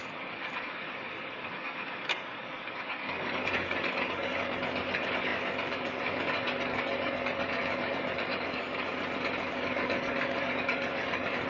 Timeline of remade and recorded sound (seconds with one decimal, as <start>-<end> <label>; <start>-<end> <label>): 0.0-8.9 remade; 8.9-9.5 recorded; 9.5-11.5 remade